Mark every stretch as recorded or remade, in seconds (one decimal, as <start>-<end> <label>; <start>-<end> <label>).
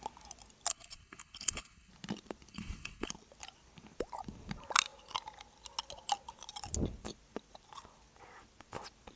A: 0.0-0.7 recorded; 0.7-1.9 remade; 1.9-2.5 recorded; 2.5-3.1 remade; 3.1-9.2 recorded